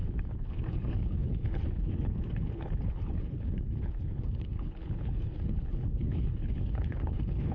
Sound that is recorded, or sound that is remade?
remade